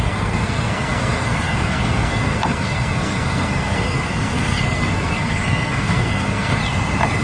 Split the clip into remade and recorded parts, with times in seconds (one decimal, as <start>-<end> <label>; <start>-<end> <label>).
0.0-6.6 remade; 6.6-7.2 recorded